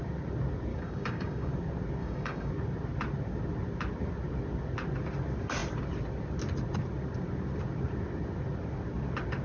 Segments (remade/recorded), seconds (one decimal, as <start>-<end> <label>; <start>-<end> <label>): 0.0-0.7 recorded; 0.7-1.5 remade; 1.5-2.0 recorded; 2.0-2.5 remade; 2.5-9.4 recorded

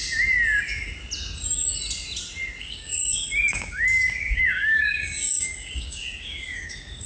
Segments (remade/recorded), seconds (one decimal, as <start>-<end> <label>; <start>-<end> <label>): 0.0-2.6 recorded; 2.6-7.1 remade

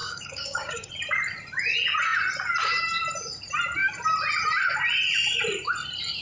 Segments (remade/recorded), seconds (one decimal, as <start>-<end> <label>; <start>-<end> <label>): 0.0-0.9 remade; 0.9-6.2 recorded

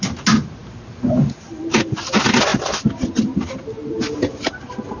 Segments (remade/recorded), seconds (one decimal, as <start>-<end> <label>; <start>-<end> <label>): 0.0-5.0 recorded

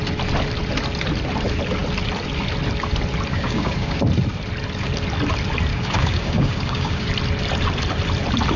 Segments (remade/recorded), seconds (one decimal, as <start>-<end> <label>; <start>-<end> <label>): 0.0-3.3 recorded; 3.3-4.0 remade; 4.0-5.7 recorded; 5.7-7.1 remade; 7.1-8.6 recorded